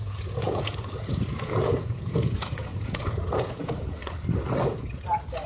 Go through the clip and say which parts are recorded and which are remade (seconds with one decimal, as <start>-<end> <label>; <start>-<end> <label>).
0.0-4.0 remade; 4.0-4.6 recorded; 4.6-5.5 remade